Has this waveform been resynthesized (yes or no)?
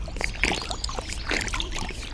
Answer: no